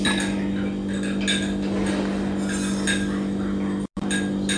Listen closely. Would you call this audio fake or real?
real